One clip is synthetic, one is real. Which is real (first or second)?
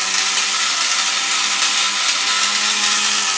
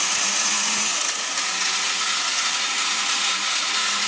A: first